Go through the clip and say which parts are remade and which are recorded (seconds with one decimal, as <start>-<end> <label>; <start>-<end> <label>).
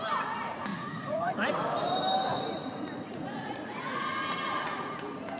0.0-0.7 recorded; 0.7-1.5 remade; 1.5-2.3 recorded; 2.3-5.0 remade; 5.0-5.4 recorded